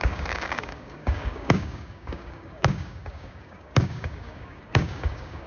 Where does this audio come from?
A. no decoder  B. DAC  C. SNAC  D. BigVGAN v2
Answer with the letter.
B